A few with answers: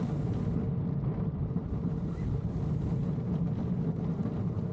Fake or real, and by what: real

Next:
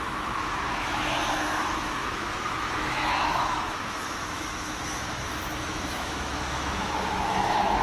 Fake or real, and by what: fake, autoencoder, DAC-VAE